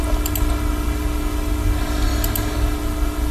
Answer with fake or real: real